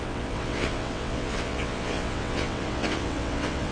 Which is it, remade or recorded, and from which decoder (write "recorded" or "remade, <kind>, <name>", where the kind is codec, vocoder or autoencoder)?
remade, vocoder, WaveNeXt